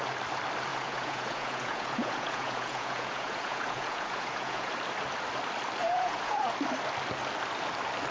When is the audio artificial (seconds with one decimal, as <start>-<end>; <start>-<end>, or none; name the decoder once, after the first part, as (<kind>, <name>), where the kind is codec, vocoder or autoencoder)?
0.7-4.7 (vocoder, Vocos); 5.8-6.5